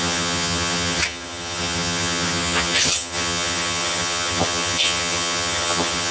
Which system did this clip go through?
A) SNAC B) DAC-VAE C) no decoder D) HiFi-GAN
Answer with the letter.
D